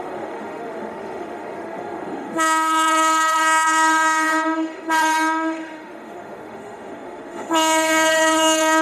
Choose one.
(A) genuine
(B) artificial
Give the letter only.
B